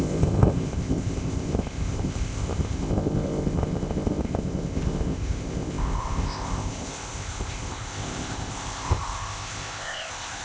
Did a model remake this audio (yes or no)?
yes